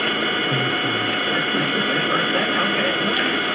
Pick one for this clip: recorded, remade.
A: recorded